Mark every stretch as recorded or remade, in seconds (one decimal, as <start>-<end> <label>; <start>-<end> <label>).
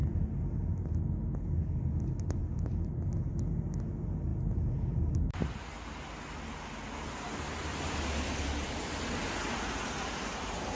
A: 0.0-10.7 recorded